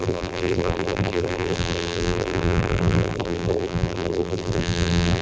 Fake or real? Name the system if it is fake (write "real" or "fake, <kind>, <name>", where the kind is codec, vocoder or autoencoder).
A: fake, vocoder, BigVGAN v2